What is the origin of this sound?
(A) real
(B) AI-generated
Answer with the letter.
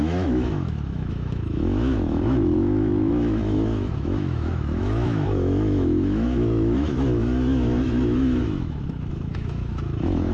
B